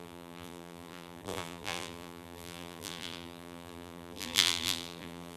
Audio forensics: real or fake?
fake